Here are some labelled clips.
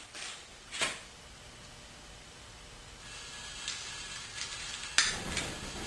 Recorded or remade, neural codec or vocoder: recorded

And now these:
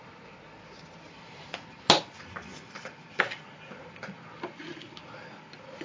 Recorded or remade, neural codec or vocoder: recorded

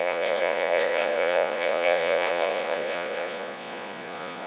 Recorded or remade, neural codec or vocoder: remade, vocoder, Vocos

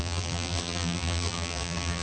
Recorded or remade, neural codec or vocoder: remade, vocoder, BigVGAN v2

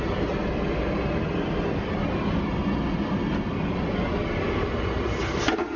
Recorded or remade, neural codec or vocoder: recorded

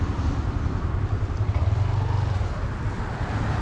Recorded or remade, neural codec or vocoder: recorded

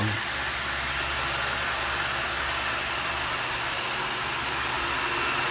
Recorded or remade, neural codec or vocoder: recorded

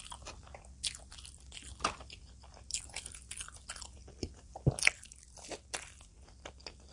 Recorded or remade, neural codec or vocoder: recorded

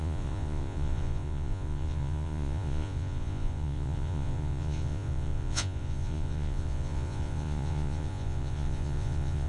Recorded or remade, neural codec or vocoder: remade, vocoder, Vocos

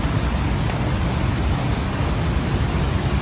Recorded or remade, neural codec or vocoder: recorded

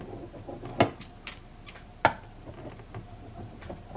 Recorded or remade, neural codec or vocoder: recorded